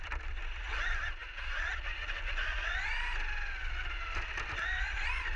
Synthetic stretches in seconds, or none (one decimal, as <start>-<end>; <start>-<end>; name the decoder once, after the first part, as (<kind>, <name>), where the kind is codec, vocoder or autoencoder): none